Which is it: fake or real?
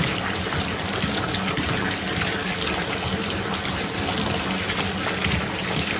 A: real